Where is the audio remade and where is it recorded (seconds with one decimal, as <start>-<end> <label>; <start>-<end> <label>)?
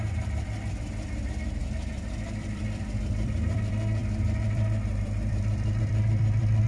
0.0-6.7 remade